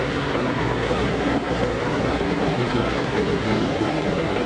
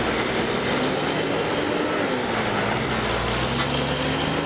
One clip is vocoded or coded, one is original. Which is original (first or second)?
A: second